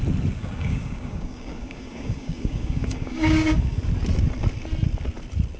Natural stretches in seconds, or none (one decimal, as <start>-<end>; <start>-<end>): 0.0-0.4; 3.8-5.6